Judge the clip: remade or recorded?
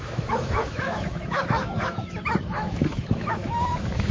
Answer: remade